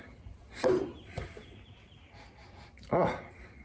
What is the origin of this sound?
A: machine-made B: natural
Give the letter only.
B